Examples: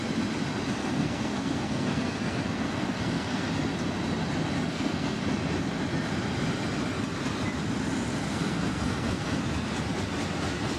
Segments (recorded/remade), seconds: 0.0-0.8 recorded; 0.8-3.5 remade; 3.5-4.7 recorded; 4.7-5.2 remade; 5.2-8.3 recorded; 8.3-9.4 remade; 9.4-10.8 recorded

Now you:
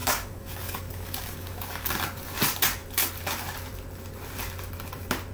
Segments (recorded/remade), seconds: 0.0-1.9 remade; 1.9-5.3 recorded

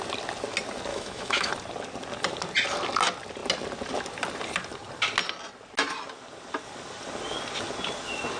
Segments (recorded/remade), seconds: 0.0-0.9 recorded; 0.9-1.5 remade; 1.5-8.4 recorded

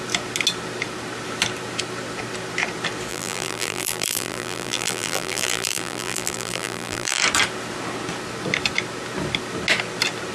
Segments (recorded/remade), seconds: 0.0-3.1 recorded; 3.1-7.2 remade; 7.2-10.3 recorded

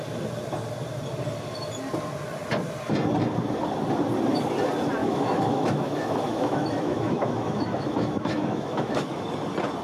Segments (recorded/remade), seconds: 0.0-5.0 recorded; 5.0-9.2 remade; 9.2-9.8 recorded

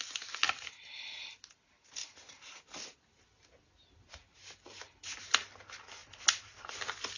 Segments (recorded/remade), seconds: 0.0-2.0 recorded; 2.0-2.6 remade; 2.6-6.0 recorded; 6.0-6.8 remade; 6.8-7.2 recorded